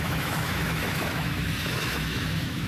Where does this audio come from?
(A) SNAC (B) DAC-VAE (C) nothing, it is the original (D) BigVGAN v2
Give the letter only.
B